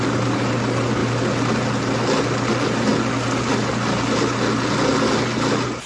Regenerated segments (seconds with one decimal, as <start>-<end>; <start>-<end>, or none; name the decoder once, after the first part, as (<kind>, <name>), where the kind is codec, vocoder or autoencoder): none